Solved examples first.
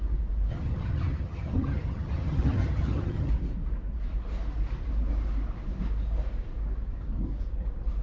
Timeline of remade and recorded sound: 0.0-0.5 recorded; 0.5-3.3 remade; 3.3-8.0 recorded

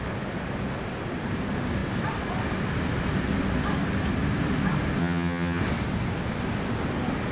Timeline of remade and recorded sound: 0.0-5.0 recorded; 5.0-5.6 remade; 5.6-7.3 recorded